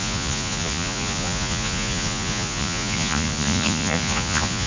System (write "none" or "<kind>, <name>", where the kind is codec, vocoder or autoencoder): vocoder, Vocos